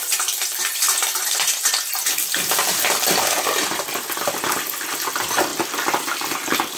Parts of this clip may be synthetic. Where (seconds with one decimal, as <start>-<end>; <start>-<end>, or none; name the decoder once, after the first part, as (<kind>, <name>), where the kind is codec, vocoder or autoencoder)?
none